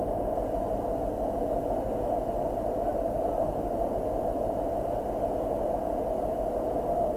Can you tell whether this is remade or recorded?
recorded